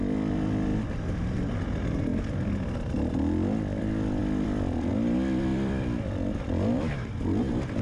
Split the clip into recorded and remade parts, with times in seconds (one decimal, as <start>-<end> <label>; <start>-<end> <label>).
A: 0.0-0.7 recorded; 0.7-1.5 remade; 1.5-4.2 recorded; 4.2-4.9 remade; 4.9-5.5 recorded; 5.5-6.7 remade; 6.7-7.8 recorded